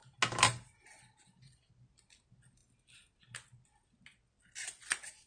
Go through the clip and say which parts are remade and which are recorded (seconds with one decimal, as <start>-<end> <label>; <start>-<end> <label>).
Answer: 0.0-5.3 recorded